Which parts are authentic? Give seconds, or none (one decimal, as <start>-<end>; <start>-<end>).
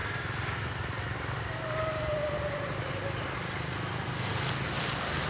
0.0-5.3